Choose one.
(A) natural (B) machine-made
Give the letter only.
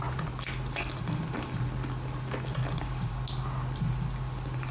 A